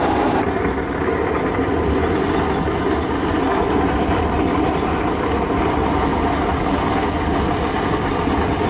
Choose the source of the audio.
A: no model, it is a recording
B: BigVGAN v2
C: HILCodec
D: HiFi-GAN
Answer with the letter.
A